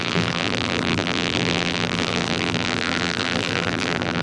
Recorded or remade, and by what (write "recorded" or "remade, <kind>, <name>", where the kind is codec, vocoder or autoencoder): remade, vocoder, BigVGAN v2